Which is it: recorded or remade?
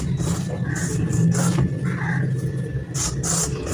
recorded